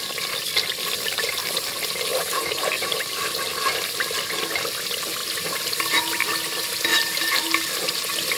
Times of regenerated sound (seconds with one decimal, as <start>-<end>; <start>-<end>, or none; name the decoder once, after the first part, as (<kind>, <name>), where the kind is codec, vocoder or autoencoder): 2.1-3.4 (vocoder, BigVGAN v2); 6.9-8.0